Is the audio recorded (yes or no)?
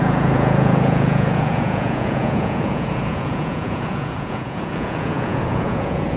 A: no